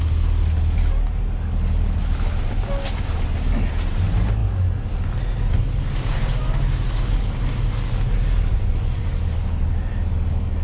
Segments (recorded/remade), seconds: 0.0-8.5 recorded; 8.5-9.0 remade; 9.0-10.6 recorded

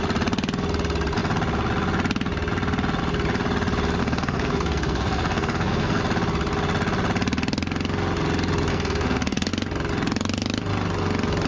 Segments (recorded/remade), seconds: 0.0-4.0 recorded; 4.0-6.0 remade; 6.0-8.7 recorded; 8.7-9.5 remade; 9.5-11.5 recorded